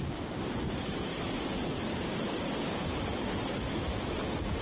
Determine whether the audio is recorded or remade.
recorded